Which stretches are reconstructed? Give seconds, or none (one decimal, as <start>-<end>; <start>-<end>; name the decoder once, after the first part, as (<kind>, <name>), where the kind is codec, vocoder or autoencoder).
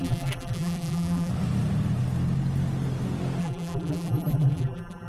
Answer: 0.0-1.3 (vocoder, BigVGAN v2); 3.4-5.1